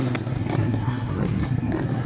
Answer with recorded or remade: remade